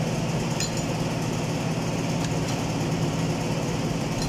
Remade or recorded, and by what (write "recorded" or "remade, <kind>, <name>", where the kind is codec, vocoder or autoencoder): recorded